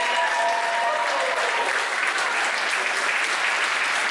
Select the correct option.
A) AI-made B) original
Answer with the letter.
B